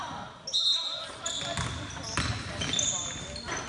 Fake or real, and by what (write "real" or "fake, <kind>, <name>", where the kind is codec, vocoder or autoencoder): real